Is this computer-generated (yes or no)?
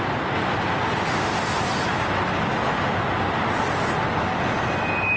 no